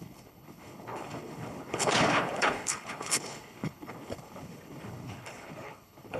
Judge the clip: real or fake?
fake